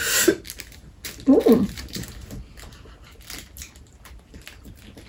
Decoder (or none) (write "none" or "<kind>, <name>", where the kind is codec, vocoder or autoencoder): none